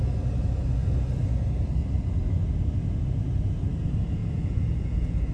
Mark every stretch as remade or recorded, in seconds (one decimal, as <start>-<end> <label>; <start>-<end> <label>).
0.0-4.2 recorded; 4.2-5.3 remade